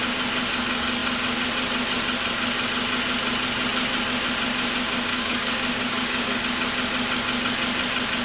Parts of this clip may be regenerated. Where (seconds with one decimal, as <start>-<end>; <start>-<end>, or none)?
5.1-6.4